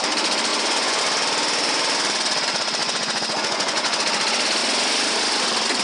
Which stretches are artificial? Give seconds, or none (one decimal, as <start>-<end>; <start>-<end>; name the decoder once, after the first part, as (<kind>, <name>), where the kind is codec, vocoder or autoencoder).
0.5-1.0 (vocoder, Vocos); 2.8-4.0